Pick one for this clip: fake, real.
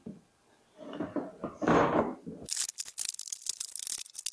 real